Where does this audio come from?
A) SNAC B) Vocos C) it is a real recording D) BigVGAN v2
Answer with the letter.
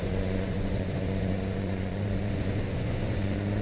B